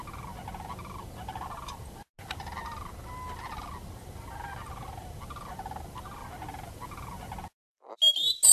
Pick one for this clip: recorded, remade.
recorded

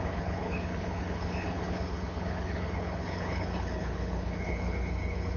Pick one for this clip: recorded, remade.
remade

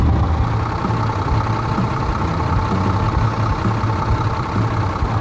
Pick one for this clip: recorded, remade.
recorded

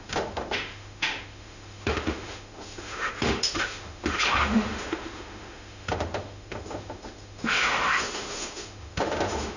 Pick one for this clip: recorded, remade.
remade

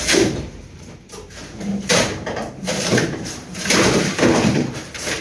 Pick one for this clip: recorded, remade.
remade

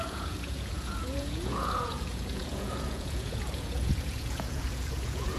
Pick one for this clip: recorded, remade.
remade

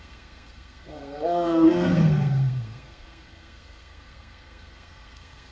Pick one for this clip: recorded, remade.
remade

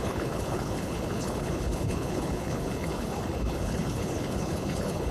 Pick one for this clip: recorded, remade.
remade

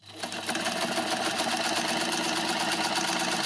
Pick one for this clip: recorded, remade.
recorded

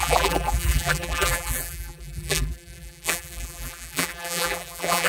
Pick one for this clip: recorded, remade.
remade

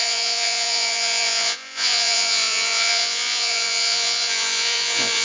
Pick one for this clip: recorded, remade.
remade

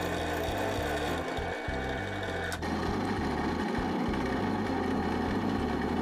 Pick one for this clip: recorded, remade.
recorded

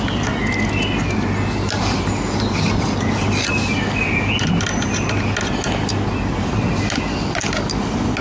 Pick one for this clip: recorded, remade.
recorded